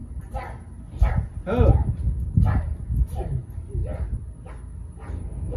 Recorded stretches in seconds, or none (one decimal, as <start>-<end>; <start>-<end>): 0.0-5.6